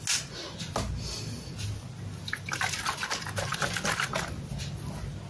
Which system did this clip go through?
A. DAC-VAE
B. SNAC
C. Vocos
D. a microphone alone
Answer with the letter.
D